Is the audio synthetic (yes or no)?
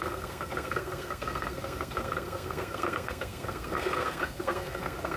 yes